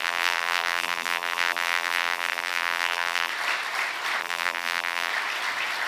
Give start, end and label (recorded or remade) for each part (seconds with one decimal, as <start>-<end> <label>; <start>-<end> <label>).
0.0-3.3 remade; 3.3-4.2 recorded; 4.2-5.1 remade; 5.1-5.9 recorded